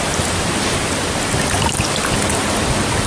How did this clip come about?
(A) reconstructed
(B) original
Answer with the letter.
B